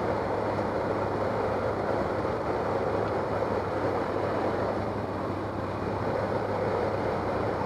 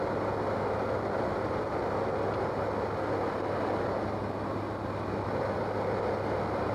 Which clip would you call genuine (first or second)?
second